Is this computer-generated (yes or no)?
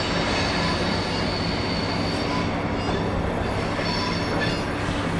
no